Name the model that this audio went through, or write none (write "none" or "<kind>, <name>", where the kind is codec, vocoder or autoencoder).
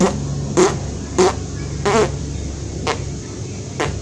none